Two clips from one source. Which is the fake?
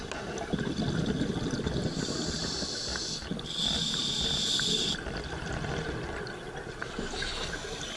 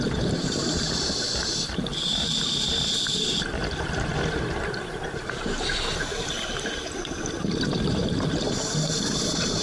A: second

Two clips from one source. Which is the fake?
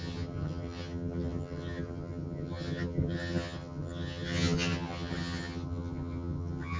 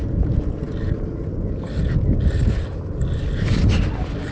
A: first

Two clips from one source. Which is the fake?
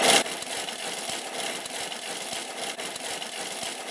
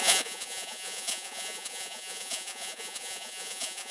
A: second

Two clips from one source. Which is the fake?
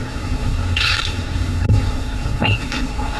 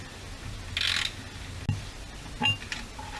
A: first